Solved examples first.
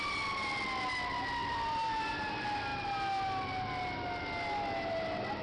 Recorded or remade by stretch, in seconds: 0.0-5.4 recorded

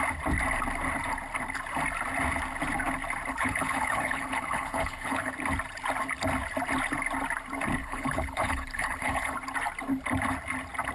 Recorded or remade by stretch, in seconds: 0.0-3.3 recorded; 3.3-5.3 remade; 5.3-7.8 recorded; 7.8-9.3 remade; 9.3-10.9 recorded

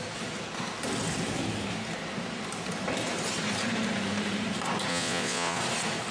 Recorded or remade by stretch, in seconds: 0.0-4.9 recorded; 4.9-5.6 remade; 5.6-6.1 recorded

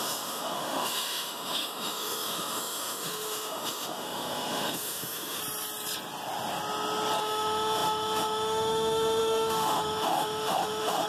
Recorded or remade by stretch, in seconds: 0.0-5.4 remade; 5.4-7.2 recorded; 7.2-11.1 remade

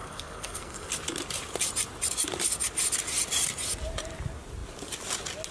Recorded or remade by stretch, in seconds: 0.0-0.9 remade; 0.9-5.5 recorded

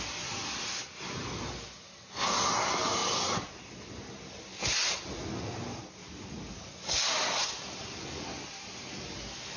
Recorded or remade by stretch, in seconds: 0.0-9.6 recorded

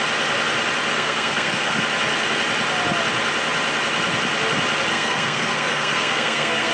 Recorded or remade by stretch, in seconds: 0.0-0.9 recorded; 0.9-1.8 remade; 1.8-4.9 recorded; 4.9-6.7 remade

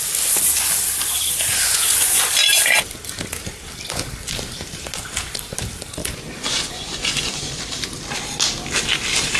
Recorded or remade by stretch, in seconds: 0.0-1.5 recorded; 1.5-2.2 remade; 2.2-6.0 recorded; 6.0-7.6 remade; 7.6-9.4 recorded